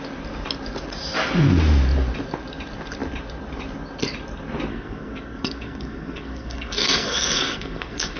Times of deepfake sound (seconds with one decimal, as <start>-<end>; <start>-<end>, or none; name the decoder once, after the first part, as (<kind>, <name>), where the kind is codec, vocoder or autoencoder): 4.7-8.2 (codec, SNAC)